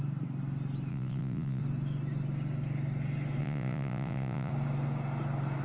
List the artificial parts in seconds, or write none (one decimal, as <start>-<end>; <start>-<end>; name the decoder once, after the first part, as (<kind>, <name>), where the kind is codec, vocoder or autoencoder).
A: 0.9-1.6 (vocoder, Vocos); 3.4-4.5